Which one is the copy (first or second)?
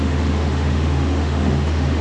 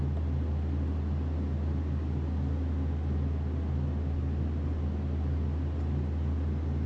first